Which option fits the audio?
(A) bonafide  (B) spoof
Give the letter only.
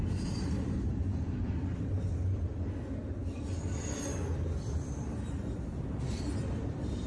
A